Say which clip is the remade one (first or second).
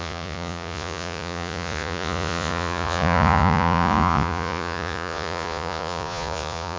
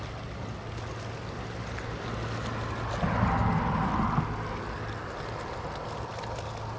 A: first